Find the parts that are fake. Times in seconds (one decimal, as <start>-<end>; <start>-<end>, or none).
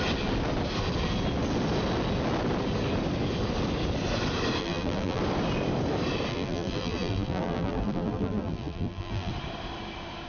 4.6-5.2; 6.3-9.3